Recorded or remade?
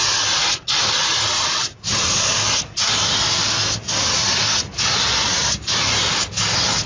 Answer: recorded